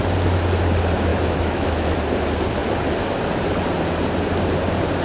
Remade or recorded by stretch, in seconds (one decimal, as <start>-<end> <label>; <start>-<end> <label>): 0.0-1.1 recorded; 1.1-2.0 remade; 2.0-5.0 recorded